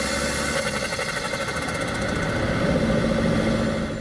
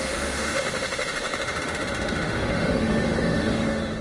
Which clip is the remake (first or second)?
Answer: second